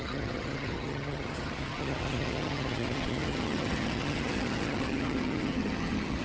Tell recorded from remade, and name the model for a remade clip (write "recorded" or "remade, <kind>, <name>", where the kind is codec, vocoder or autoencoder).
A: remade, vocoder, HiFi-GAN